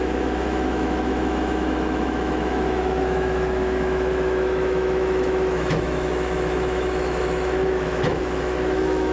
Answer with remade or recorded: remade